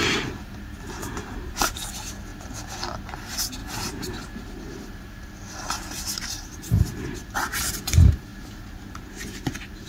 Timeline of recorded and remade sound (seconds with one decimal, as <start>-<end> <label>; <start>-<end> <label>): 0.0-3.6 recorded; 3.6-7.2 remade; 7.2-9.9 recorded